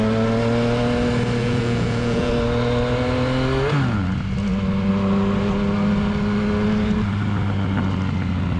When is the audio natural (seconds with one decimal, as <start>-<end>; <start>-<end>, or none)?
0.0-1.4; 2.3-8.6